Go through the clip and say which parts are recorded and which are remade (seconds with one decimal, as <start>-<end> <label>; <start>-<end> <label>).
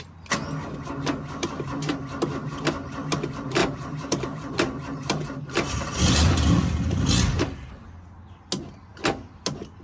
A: 0.0-3.6 recorded; 3.6-6.0 remade; 6.0-9.8 recorded